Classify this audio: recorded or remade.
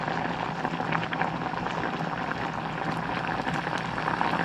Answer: recorded